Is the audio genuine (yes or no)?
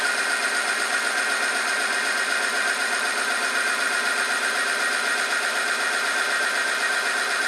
yes